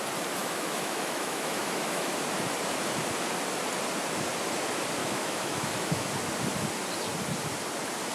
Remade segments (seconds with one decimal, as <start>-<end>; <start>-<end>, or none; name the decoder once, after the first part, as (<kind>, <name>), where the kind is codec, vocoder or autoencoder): 0.4-2.1 (autoencoder, DAC-VAE); 5.0-6.1